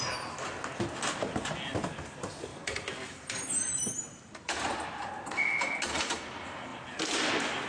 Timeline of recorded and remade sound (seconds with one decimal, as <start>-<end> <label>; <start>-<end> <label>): 0.0-2.5 recorded; 2.5-5.1 remade; 5.1-6.7 recorded; 6.7-7.3 remade; 7.3-7.7 recorded

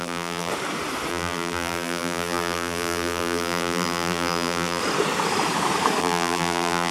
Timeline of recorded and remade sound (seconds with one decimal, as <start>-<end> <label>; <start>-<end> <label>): 0.0-0.5 remade; 0.5-1.1 recorded; 1.1-4.8 remade; 4.8-6.0 recorded; 6.0-6.9 remade

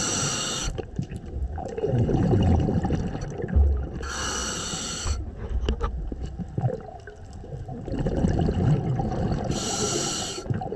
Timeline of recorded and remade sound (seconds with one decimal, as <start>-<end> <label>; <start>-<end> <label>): 0.0-0.6 recorded; 0.6-2.8 remade; 2.8-10.8 recorded

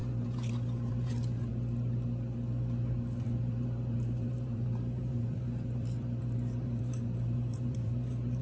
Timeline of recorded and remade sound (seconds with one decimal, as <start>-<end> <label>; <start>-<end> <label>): 0.0-1.5 remade; 1.5-3.2 recorded; 3.2-8.4 remade

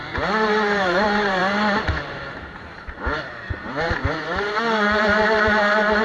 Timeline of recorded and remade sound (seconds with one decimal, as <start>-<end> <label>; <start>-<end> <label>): 0.0-1.4 remade; 1.4-2.0 recorded; 2.0-4.0 remade; 4.0-5.0 recorded; 5.0-6.0 remade

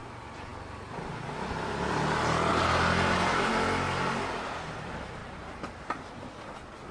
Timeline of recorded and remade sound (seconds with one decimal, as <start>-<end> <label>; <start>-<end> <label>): 0.0-2.5 recorded; 2.5-3.5 remade; 3.5-5.2 recorded; 5.2-6.0 remade; 6.0-6.9 recorded